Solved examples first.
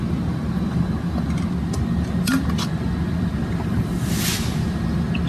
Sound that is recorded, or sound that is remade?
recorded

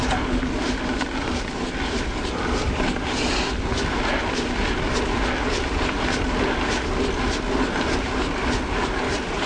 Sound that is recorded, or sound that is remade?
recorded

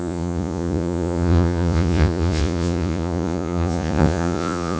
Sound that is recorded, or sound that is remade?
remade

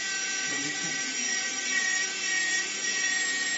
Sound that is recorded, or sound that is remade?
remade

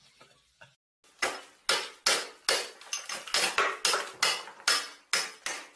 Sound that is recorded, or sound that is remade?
recorded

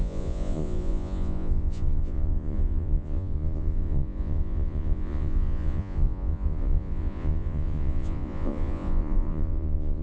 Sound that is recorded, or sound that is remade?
remade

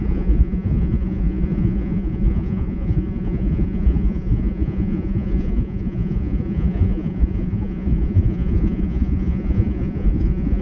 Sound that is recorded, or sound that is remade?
remade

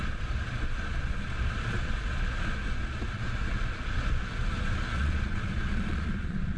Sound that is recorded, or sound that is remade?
remade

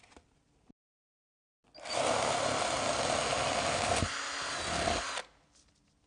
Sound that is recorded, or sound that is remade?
recorded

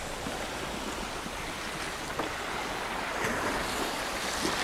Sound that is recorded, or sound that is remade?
recorded